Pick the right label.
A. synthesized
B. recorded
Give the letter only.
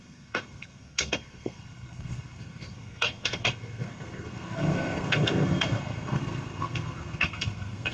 A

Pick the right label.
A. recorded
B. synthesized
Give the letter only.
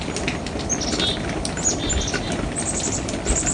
A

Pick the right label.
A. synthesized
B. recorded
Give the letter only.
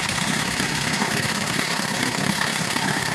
A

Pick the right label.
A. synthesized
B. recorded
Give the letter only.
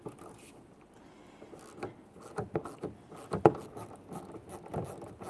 B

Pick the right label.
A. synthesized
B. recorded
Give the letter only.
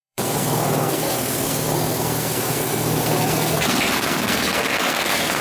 A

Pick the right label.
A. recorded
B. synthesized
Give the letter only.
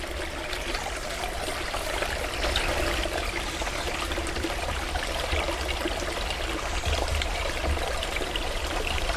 A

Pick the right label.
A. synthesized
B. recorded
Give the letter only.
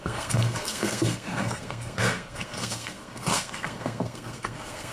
A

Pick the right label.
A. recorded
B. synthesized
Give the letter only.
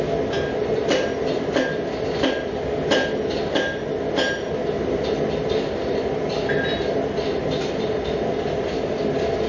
A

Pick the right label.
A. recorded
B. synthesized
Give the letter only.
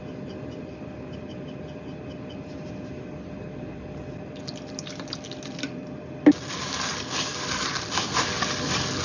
A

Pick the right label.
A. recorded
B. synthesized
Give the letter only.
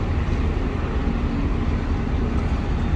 A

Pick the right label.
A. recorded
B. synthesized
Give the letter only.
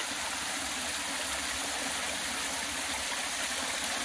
A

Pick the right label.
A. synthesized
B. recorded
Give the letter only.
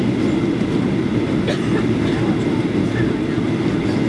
B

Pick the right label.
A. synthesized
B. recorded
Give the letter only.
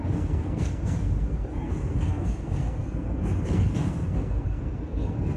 A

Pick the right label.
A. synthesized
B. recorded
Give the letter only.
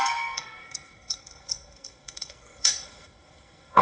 A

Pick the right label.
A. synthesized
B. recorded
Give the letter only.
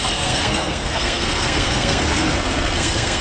A